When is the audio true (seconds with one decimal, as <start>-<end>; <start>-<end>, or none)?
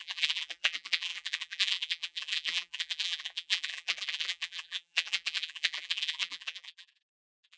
none